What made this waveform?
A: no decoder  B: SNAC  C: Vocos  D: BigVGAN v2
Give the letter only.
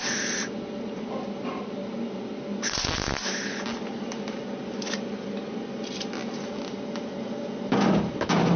A